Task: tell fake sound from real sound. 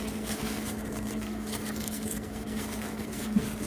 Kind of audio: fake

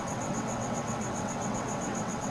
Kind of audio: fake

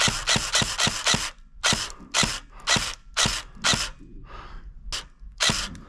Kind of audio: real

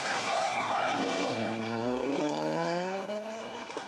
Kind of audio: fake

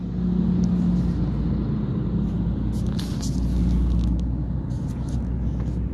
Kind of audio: real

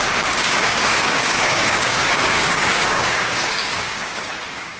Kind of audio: fake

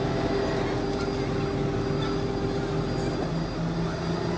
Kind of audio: real